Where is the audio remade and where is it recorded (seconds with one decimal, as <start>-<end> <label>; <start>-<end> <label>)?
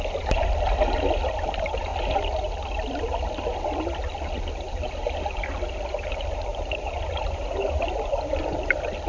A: 0.0-6.5 recorded; 6.5-7.7 remade; 7.7-9.1 recorded